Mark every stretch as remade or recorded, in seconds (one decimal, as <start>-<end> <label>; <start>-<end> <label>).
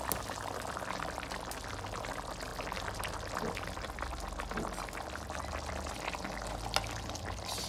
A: 0.0-7.7 recorded